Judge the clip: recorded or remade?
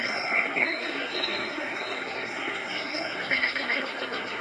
remade